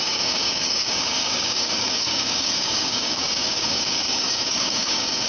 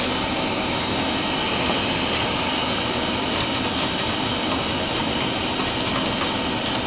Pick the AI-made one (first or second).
first